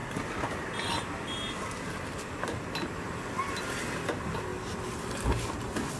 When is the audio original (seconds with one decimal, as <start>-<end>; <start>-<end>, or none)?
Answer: 0.0-6.0